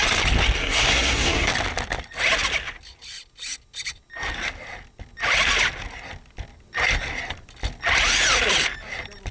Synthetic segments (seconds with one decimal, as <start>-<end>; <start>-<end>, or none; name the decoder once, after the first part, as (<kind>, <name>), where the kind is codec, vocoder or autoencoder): 0.6-1.5 (codec, SNAC)